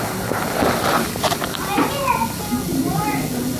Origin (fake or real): real